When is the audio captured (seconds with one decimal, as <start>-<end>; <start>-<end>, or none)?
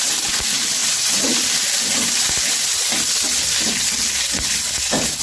0.0-0.8; 3.9-5.2